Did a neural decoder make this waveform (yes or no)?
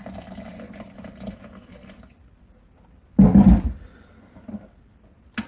no